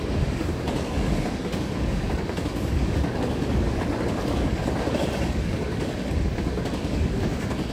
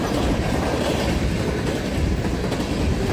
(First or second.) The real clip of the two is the second